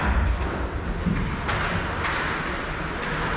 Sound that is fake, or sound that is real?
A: real